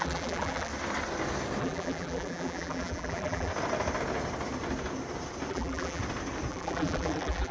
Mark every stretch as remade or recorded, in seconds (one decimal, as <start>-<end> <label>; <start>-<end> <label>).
0.0-0.7 remade; 0.7-1.6 recorded; 1.6-3.5 remade; 3.5-5.5 recorded; 5.5-6.0 remade; 6.0-6.5 recorded; 6.5-7.5 remade